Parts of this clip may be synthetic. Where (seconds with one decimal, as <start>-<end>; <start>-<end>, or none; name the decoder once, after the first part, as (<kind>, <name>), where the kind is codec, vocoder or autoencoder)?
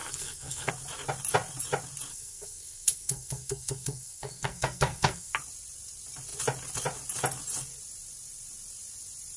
0.0-0.7 (codec, SNAC); 2.1-5.3